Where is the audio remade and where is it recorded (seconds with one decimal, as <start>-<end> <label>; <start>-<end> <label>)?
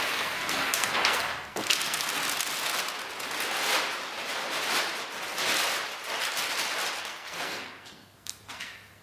0.0-2.1 remade; 2.1-7.0 recorded; 7.0-9.0 remade